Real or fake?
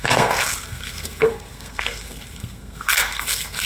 fake